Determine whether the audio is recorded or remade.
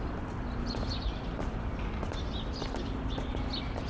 remade